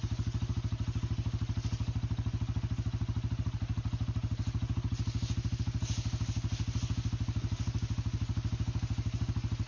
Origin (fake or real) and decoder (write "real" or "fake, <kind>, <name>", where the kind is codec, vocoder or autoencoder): real